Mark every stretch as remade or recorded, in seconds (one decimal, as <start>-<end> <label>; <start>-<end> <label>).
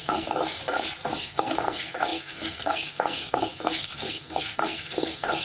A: 0.0-0.6 remade; 0.6-1.2 recorded; 1.2-5.4 remade